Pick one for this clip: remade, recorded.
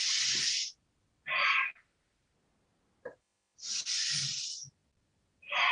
recorded